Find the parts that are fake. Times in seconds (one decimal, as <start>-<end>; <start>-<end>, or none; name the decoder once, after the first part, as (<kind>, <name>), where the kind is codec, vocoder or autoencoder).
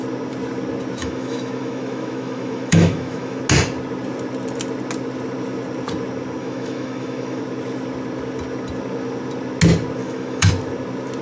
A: 1.0-3.4 (autoencoder, DAC-VAE); 6.4-7.4; 10.0-10.5